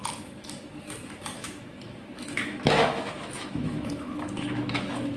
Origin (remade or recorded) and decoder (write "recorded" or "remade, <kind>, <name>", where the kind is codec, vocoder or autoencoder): remade, autoencoder, DAC-VAE